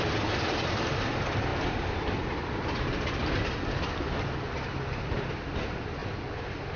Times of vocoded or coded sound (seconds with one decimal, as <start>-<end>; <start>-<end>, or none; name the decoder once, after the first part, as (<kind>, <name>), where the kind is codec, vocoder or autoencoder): 0.0-1.5 (vocoder, BigVGAN v2); 5.6-6.0